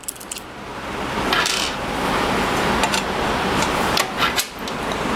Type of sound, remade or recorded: recorded